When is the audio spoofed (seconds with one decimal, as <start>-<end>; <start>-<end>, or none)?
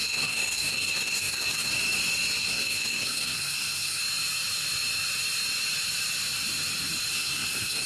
0.0-1.7; 2.4-4.0; 7.1-7.9